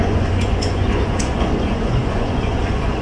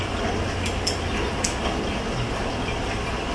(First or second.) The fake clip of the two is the first